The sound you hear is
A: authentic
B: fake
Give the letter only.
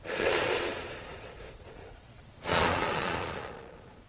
B